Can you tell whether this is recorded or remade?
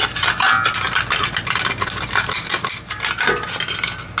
recorded